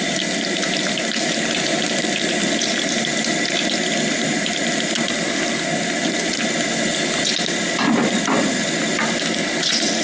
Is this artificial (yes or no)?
no